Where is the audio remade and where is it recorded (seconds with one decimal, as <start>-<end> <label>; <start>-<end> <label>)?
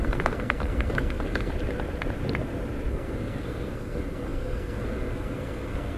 0.0-1.5 remade; 1.5-2.9 recorded; 2.9-6.0 remade